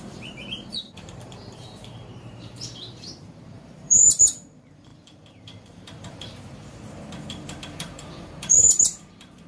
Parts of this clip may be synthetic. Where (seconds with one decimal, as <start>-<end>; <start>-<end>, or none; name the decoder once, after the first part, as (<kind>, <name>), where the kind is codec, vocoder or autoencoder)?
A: 0.0-9.5 (vocoder, BigVGAN v2)